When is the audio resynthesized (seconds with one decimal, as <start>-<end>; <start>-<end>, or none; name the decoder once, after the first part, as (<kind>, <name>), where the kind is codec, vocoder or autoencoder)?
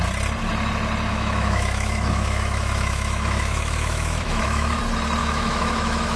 1.1-4.8 (autoencoder, DAC-VAE); 5.2-6.2